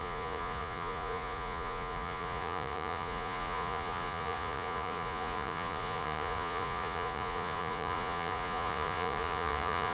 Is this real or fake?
fake